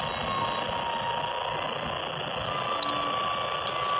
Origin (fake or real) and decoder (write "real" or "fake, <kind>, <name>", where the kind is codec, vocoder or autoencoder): real